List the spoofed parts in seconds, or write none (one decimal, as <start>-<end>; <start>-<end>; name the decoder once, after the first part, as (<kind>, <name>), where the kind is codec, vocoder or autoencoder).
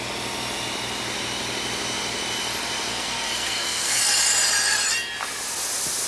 2.9-4.0 (codec, SNAC)